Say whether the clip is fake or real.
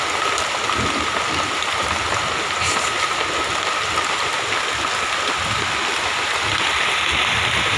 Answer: real